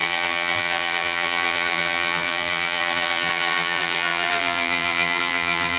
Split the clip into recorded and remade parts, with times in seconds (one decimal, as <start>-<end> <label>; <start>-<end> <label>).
0.0-5.8 remade